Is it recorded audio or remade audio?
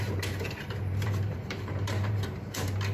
remade